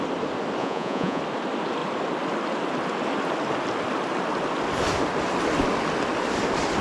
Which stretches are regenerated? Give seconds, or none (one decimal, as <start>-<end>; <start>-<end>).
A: 0.6-1.2